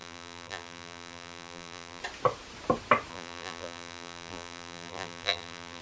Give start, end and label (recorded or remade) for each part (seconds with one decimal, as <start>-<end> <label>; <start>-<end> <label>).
0.0-2.0 remade; 2.0-3.1 recorded; 3.1-5.8 remade